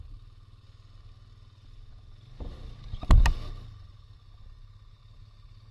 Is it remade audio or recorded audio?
recorded